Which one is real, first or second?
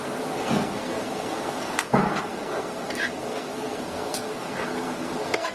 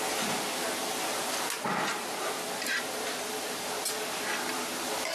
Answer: second